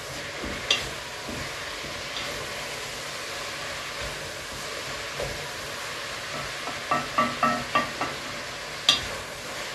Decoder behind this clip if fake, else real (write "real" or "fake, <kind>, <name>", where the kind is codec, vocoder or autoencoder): real